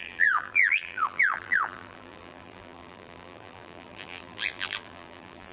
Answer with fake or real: fake